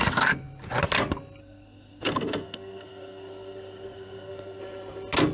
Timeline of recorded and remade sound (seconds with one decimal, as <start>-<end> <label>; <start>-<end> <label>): 0.0-1.4 recorded; 1.4-4.6 remade; 4.6-5.3 recorded